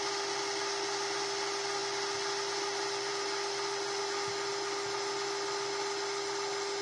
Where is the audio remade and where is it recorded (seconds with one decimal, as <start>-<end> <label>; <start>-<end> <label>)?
0.0-6.8 recorded